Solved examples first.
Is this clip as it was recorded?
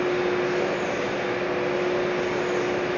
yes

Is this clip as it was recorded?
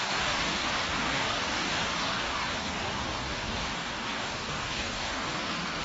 no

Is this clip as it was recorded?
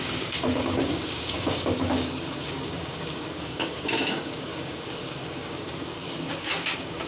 no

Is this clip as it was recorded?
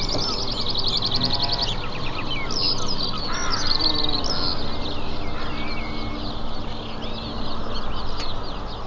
yes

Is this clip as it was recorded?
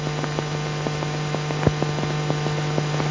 yes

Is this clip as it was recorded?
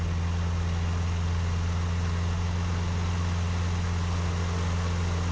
yes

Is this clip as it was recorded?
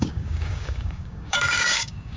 no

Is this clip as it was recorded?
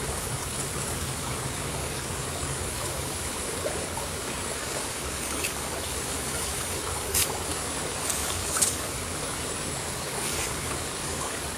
no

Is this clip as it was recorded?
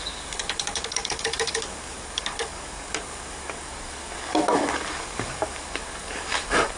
no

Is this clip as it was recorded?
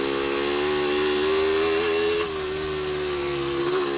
yes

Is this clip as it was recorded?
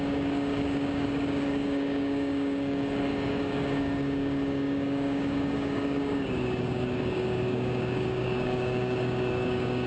no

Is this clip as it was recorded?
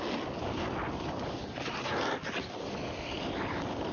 yes